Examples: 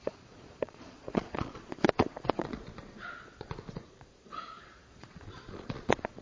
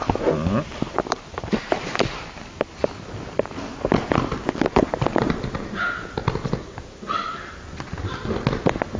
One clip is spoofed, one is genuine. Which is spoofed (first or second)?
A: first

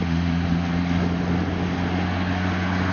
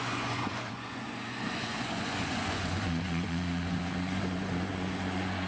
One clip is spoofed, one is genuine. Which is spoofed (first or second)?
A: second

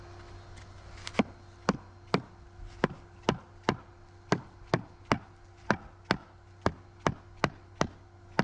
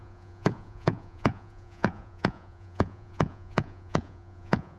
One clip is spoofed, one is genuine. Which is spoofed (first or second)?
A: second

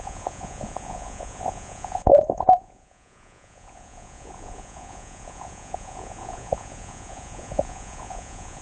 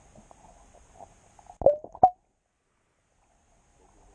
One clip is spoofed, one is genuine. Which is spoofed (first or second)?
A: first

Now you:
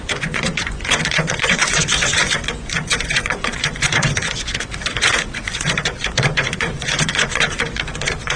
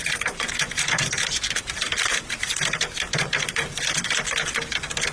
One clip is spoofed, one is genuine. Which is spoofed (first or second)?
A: first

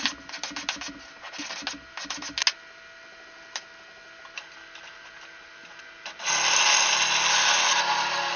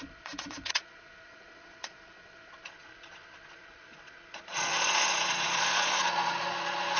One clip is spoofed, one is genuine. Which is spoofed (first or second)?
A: second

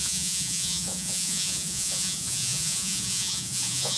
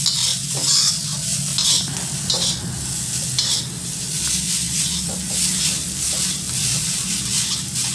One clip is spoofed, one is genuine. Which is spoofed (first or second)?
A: first